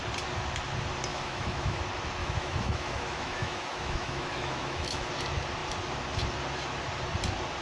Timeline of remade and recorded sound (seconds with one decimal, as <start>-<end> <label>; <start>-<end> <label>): 0.0-1.1 recorded; 1.1-1.8 remade; 1.8-2.2 recorded; 2.2-5.1 remade; 5.1-7.6 recorded